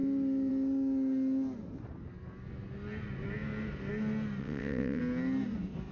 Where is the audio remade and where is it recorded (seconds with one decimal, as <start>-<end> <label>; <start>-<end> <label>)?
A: 0.0-4.4 recorded; 4.4-5.0 remade; 5.0-5.9 recorded